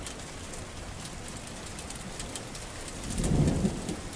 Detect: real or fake real